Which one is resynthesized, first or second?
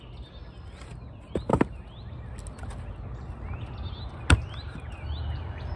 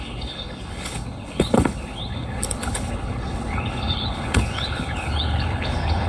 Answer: second